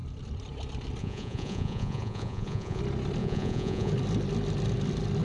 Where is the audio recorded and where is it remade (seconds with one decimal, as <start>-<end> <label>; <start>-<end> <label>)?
0.0-1.0 recorded; 1.0-2.8 remade; 2.8-3.2 recorded; 3.2-3.9 remade; 3.9-5.2 recorded